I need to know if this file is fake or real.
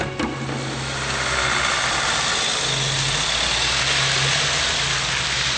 real